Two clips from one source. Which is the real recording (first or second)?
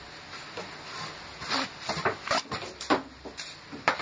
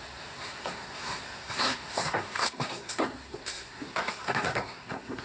first